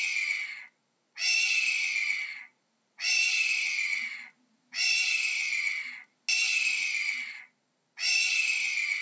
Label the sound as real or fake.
real